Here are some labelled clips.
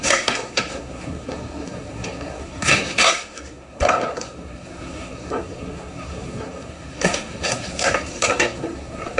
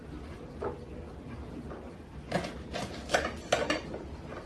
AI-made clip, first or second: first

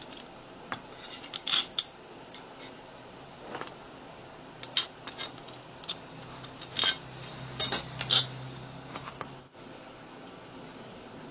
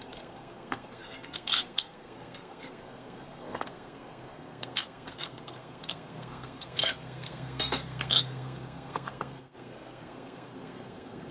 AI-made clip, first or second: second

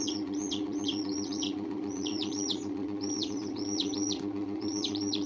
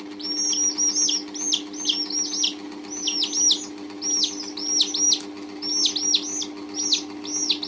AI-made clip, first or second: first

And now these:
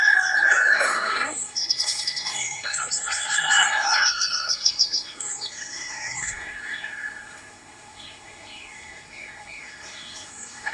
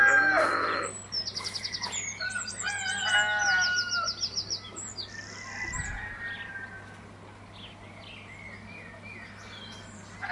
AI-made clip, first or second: first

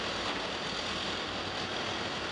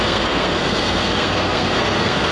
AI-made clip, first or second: second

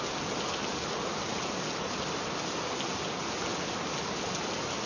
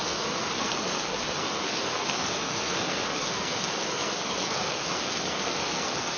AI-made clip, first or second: second